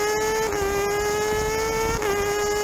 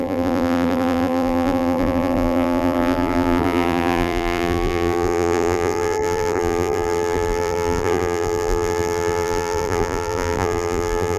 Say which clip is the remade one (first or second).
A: second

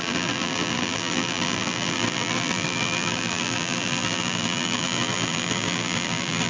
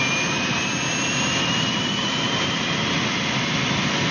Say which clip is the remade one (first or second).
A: first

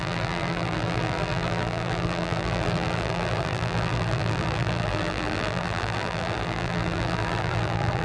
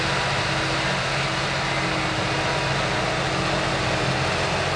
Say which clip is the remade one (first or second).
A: first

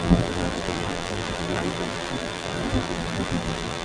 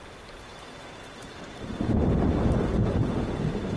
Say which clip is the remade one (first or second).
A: first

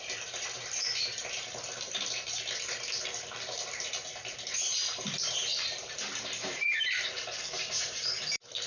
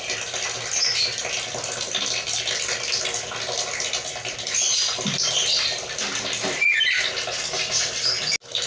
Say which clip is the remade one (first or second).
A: first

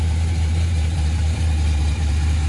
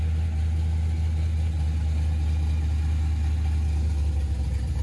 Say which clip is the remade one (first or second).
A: first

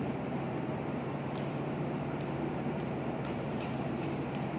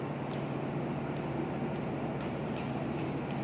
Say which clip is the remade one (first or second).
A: first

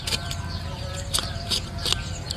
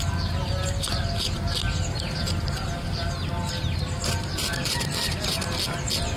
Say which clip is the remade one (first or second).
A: first